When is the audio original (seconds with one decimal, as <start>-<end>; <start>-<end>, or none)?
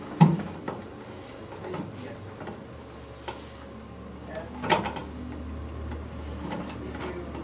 0.0-7.4